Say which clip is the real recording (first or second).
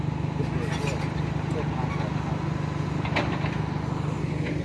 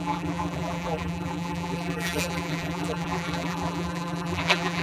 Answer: first